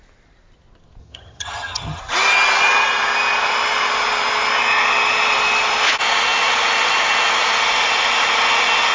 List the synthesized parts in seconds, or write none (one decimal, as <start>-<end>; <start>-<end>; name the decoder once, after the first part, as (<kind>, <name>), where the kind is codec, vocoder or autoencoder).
1.0-2.0 (vocoder, HiFi-GAN)